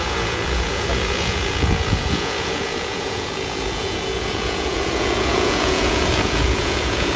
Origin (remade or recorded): remade